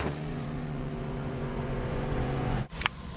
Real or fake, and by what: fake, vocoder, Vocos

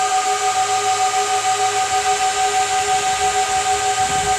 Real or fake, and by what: real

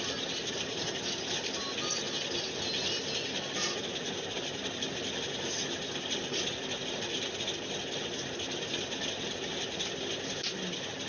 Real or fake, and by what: real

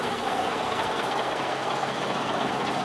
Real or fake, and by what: fake, codec, SNAC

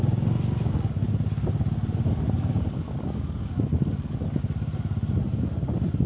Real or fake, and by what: real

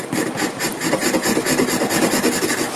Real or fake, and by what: real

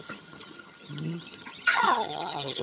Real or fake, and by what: fake, vocoder, HiFi-GAN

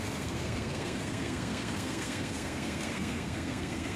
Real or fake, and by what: fake, codec, SNAC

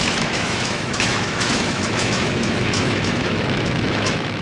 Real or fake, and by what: fake, autoencoder, DAC-VAE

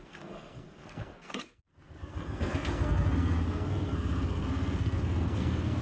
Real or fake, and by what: fake, codec, SNAC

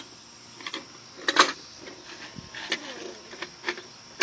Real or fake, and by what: real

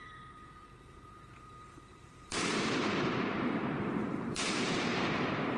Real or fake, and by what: fake, vocoder, BigVGAN v2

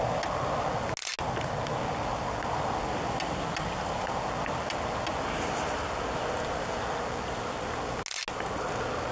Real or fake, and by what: real